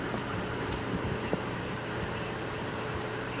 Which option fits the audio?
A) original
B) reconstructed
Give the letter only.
B